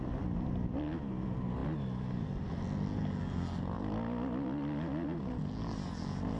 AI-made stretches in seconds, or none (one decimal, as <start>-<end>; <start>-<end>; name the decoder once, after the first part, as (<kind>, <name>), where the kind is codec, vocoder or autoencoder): none